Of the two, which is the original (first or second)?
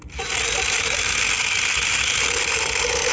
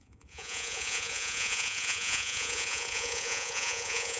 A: first